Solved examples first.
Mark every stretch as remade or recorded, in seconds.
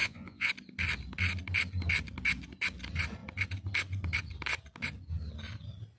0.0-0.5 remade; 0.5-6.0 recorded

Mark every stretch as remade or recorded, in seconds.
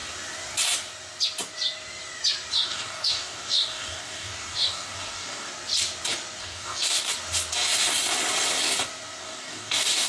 0.0-2.5 recorded; 2.5-5.5 remade; 5.5-6.4 recorded; 6.4-7.1 remade; 7.1-9.2 recorded; 9.2-10.1 remade